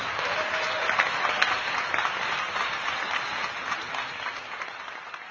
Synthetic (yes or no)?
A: no